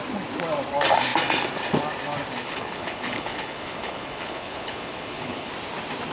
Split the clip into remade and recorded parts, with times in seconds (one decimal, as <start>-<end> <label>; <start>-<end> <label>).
0.0-2.4 recorded; 2.4-5.5 remade; 5.5-6.1 recorded